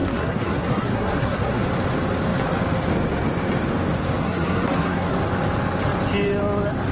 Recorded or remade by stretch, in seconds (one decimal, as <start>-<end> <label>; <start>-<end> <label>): 0.0-1.6 remade; 1.6-4.2 recorded; 4.2-5.1 remade; 5.1-6.9 recorded